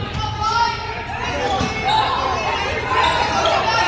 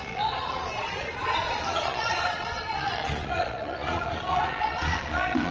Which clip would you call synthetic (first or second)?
second